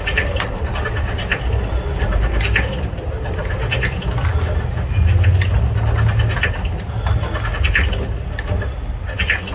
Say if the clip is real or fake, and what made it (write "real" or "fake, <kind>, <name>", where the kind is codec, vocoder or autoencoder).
real